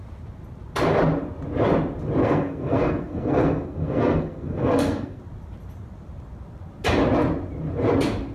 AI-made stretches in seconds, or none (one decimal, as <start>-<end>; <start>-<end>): 2.2-5.2